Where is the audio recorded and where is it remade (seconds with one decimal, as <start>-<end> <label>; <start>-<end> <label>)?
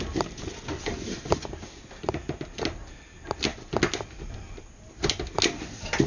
0.0-6.1 recorded